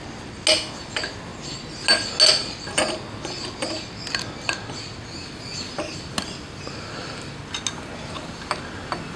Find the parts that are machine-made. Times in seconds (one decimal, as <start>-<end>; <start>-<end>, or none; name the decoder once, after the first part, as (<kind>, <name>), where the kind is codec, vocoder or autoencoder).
none